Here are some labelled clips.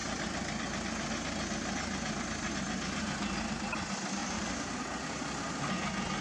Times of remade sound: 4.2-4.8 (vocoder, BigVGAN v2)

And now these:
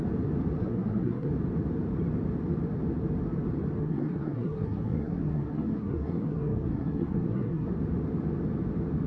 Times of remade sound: 0.6-1.3 (codec, SNAC); 3.8-7.7

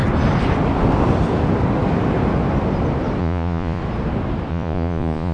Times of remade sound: 3.2-3.8 (vocoder, Vocos); 4.5-5.3

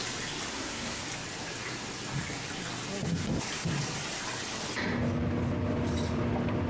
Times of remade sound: 0.5-1.0 (codec, SNAC)

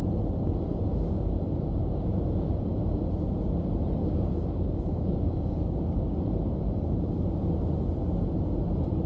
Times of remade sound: 0.7-1.4 (codec, DAC); 1.8-2.5; 4.0-6.2

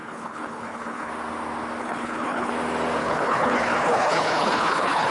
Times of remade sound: 0.0-1.1 (codec, HILCodec); 1.8-2.5; 3.0-5.1

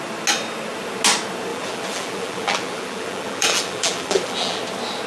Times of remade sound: 1.5-4.6 (vocoder, BigVGAN v2)